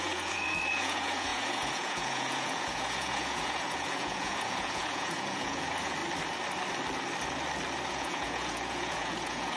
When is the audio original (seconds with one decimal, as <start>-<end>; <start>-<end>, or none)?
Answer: 6.0-7.9